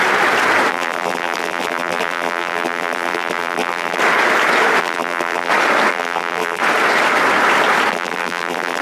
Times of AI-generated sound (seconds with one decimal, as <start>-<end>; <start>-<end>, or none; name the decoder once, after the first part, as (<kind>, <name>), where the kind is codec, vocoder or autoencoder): 0.7-4.0 (vocoder, BigVGAN v2); 4.8-5.5; 5.9-6.6; 7.9-8.8